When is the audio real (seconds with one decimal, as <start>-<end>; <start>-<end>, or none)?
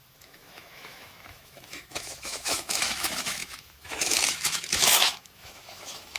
none